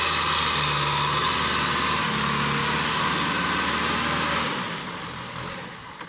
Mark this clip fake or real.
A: real